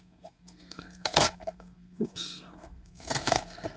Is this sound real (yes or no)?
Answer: no